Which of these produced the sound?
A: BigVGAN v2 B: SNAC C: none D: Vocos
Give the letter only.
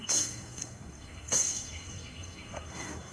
B